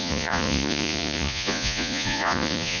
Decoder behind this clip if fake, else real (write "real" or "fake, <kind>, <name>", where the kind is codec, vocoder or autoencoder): fake, vocoder, Vocos